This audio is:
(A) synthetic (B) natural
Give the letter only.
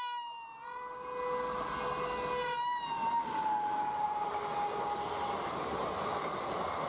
B